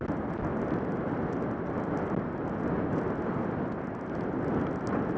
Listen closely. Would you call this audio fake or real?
real